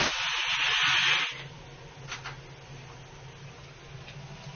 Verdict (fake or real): real